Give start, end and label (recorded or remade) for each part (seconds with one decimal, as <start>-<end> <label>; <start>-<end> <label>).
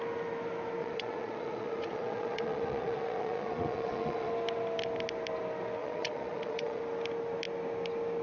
0.0-0.8 recorded; 0.8-4.3 remade; 4.3-5.8 recorded; 5.8-6.8 remade; 6.8-8.2 recorded